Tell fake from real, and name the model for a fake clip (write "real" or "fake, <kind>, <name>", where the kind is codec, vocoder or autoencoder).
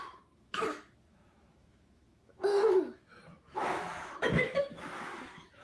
fake, autoencoder, DAC-VAE